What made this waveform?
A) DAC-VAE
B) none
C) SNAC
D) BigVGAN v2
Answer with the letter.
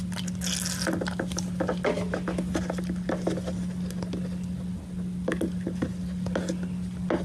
B